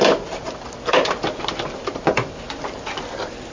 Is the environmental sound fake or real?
fake